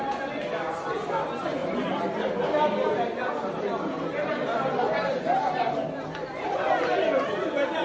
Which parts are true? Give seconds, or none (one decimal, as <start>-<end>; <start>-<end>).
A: 0.0-7.8